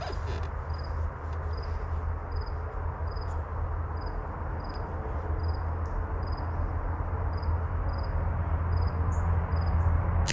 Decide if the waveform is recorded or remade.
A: recorded